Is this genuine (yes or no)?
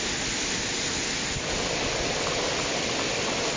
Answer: yes